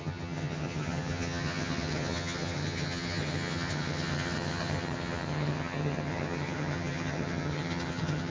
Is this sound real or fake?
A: fake